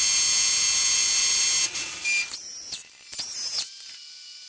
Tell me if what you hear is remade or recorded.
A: recorded